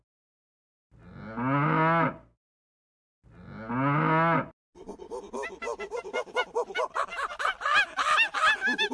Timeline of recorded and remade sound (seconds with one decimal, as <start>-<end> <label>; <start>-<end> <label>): 0.0-8.9 recorded